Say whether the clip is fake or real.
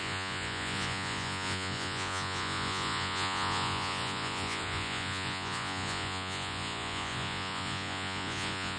fake